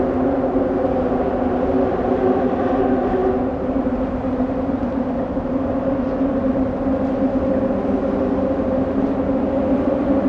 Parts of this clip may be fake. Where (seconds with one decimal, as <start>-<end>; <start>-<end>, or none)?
none